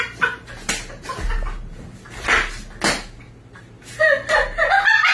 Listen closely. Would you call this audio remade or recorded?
recorded